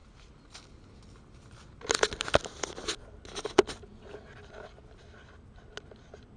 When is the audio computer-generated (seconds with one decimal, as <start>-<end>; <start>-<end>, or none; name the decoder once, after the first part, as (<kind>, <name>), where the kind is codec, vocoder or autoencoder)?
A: none